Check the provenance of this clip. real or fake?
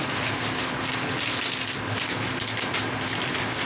real